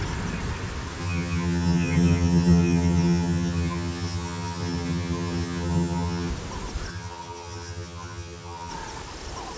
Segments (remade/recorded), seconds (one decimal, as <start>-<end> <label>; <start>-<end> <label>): 0.0-1.0 recorded; 1.0-6.3 remade; 6.3-6.9 recorded; 6.9-8.7 remade; 8.7-9.6 recorded